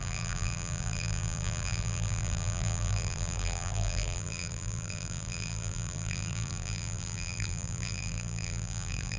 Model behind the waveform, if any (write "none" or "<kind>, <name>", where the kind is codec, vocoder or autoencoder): vocoder, BigVGAN v2